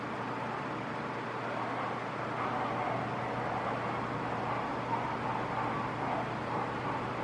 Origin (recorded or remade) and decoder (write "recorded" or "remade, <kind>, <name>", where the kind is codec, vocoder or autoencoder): recorded